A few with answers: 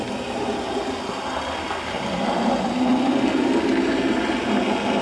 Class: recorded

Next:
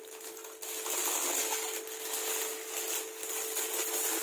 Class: recorded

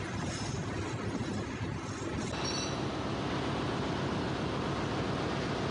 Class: recorded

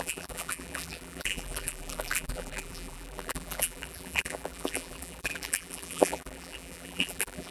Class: remade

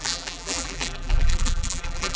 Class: remade